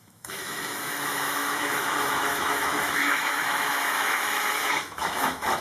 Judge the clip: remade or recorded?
remade